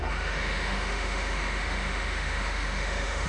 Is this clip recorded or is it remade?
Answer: remade